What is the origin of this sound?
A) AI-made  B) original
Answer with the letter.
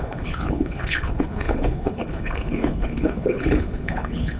A